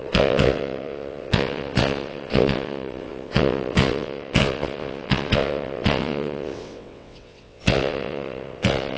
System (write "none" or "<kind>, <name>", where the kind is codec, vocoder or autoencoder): vocoder, WaveNeXt